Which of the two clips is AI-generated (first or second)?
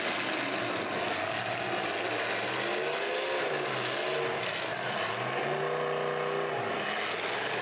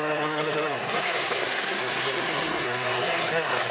second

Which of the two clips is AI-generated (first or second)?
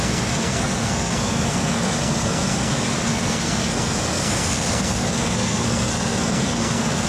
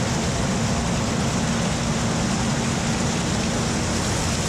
first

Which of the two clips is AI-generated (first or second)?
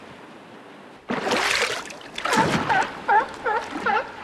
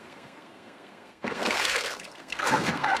second